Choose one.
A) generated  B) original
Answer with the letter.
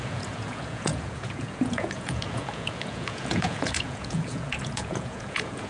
A